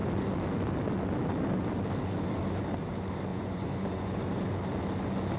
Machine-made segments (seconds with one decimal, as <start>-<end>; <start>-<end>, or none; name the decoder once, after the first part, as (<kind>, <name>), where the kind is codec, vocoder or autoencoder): 3.3-4.2 (vocoder, Vocos)

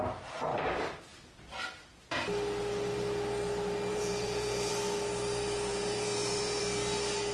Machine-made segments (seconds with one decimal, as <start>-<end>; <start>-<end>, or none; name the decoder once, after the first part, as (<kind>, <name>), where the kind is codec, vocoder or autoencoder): 3.9-4.7 (vocoder, Vocos); 5.7-6.6

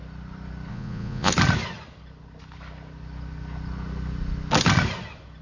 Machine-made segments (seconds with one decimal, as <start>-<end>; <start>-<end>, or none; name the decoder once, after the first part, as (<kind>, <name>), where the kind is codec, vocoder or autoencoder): 0.7-1.3 (vocoder, Vocos)

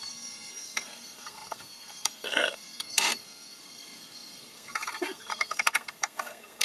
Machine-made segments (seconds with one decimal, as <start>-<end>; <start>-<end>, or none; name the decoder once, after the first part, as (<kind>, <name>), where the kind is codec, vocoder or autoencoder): 0.0-6.6 (codec, SNAC)

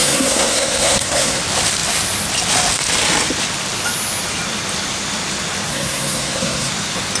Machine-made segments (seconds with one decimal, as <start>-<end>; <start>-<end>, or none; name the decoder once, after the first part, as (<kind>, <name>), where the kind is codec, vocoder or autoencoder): 0.0-1.4 (codec, SNAC); 5.7-6.7

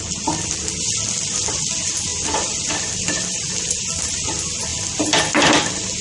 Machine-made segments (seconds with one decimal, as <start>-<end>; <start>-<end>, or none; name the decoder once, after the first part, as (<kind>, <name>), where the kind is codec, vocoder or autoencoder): none

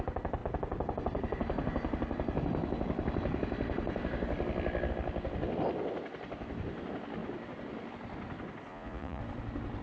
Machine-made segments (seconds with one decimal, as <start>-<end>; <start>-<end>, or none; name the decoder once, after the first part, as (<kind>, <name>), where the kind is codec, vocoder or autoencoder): 8.7-9.2 (vocoder, Vocos)